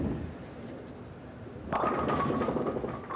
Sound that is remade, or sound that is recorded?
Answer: recorded